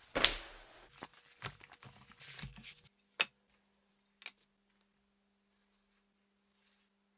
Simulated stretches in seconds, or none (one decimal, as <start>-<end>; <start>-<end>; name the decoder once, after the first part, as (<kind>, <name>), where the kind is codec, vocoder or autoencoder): none